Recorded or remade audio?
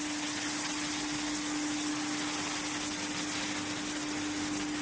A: recorded